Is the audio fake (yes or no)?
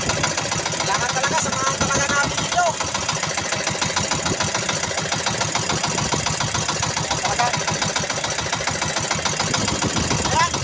no